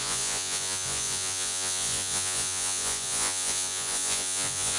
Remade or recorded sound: remade